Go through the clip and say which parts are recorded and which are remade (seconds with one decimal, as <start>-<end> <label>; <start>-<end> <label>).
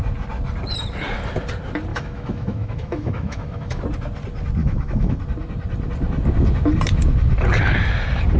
0.0-1.9 recorded; 1.9-3.8 remade; 3.8-4.6 recorded; 4.6-5.2 remade; 5.2-8.4 recorded